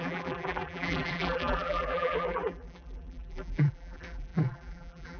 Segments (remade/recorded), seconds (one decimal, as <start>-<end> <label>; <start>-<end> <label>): 0.0-5.2 remade